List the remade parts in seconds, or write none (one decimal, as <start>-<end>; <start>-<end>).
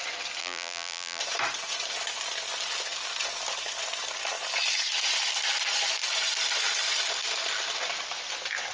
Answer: 0.4-1.2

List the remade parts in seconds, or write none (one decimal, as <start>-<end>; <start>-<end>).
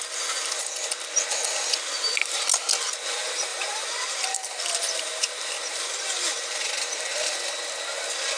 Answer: 3.5-6.6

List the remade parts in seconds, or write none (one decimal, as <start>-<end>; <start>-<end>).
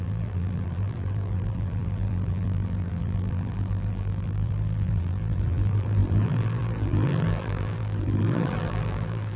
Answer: 0.0-9.4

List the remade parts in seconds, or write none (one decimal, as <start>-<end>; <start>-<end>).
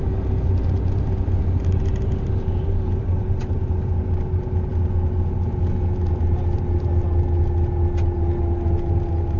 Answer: none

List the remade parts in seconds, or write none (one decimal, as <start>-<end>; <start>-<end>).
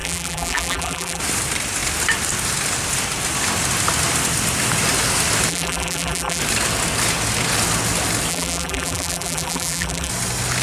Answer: 0.0-1.2; 5.5-6.4; 8.3-10.1